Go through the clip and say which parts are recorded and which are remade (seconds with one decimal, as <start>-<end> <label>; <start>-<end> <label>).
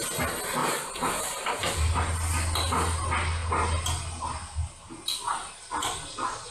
0.0-0.6 recorded; 0.6-1.6 remade; 1.6-6.5 recorded